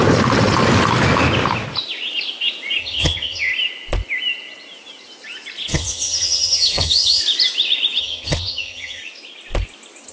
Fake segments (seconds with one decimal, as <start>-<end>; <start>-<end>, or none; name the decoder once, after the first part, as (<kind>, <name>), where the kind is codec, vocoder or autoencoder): 2.8-3.5 (vocoder, HiFi-GAN); 5.7-7.2; 8.0-9.0

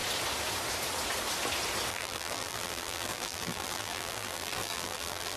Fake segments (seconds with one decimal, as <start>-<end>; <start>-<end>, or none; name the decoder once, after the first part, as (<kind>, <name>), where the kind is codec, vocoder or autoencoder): 1.9-5.4 (vocoder, BigVGAN v2)

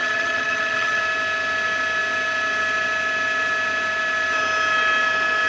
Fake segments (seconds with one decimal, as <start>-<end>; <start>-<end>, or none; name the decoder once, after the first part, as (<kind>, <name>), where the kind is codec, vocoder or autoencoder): 0.0-1.0 (vocoder, HiFi-GAN)